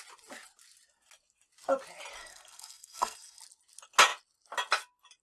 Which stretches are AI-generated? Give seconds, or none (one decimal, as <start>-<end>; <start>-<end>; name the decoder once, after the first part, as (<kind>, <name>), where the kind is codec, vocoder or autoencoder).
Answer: 2.2-3.4 (codec, SNAC)